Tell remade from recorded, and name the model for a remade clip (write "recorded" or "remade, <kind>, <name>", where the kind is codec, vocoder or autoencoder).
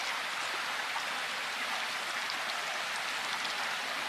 recorded